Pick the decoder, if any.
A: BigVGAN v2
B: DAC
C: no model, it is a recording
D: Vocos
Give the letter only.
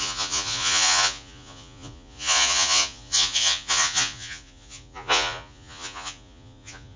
D